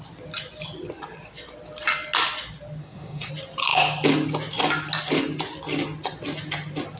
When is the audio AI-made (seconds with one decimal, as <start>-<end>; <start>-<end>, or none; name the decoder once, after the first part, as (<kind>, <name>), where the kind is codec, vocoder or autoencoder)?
2.8-3.3 (codec, SNAC)